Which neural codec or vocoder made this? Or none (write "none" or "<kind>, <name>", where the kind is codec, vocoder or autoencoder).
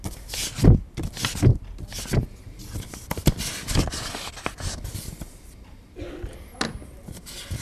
none